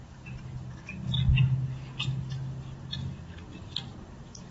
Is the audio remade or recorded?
recorded